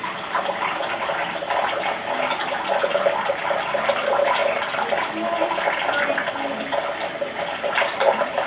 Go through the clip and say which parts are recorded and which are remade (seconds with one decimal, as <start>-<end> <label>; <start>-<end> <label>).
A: 0.0-8.5 remade